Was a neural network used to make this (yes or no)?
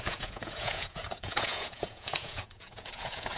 yes